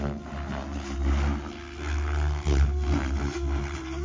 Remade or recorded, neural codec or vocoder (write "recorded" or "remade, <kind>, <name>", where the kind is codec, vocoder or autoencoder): recorded